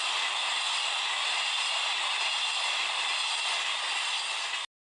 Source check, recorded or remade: recorded